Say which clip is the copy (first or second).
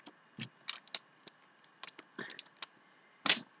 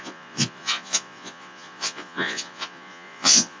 second